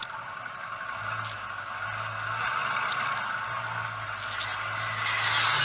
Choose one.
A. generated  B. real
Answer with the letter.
B